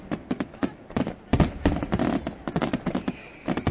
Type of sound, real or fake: real